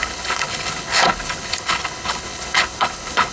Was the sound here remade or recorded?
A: remade